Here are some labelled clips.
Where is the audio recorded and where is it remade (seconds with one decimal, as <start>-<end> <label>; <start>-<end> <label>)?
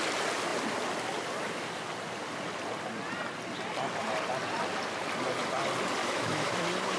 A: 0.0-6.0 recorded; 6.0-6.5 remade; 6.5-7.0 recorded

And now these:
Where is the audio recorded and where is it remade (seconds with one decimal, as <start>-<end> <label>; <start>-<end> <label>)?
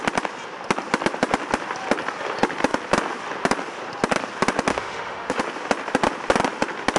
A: 0.0-4.7 recorded; 4.7-5.4 remade; 5.4-7.0 recorded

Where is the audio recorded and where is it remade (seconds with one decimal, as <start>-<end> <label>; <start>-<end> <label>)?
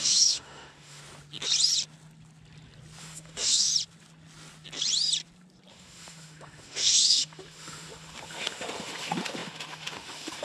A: 0.0-1.0 remade; 1.0-3.0 recorded; 3.0-3.7 remade; 3.7-5.7 recorded; 5.7-10.4 remade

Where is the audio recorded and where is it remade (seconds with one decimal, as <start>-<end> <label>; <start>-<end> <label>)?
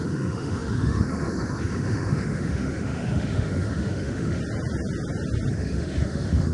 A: 0.0-4.4 remade; 4.4-5.5 recorded; 5.5-6.5 remade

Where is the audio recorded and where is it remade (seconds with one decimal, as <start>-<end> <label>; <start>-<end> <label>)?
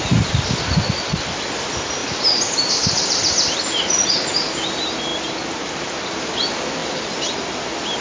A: 0.0-8.0 recorded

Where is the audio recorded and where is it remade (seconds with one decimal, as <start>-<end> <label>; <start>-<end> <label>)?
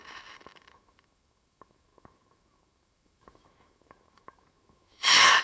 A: 0.0-5.4 remade